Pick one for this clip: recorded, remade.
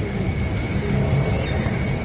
recorded